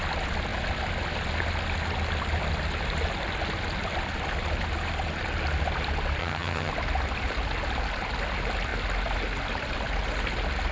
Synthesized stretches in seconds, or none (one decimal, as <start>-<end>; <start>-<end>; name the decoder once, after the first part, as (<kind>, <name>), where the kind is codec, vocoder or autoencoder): 6.2-6.7 (vocoder, HiFi-GAN)